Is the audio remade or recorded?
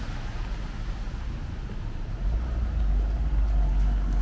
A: recorded